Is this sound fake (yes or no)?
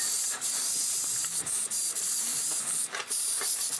yes